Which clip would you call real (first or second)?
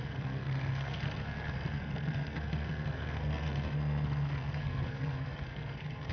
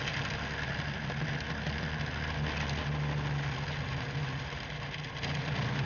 second